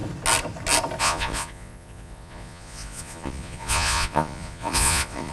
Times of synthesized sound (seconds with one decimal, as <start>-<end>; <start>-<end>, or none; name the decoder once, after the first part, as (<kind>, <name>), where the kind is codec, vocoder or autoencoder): 1.0-5.3 (vocoder, Vocos)